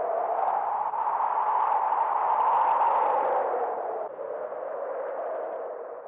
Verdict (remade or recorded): recorded